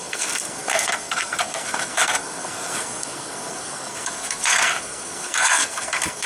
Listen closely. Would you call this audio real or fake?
fake